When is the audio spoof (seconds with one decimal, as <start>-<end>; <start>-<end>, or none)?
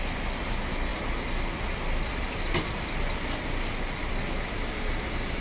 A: none